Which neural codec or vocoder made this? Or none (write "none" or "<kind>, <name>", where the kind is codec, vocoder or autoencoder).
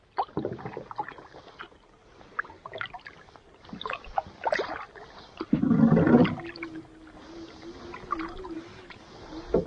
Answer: none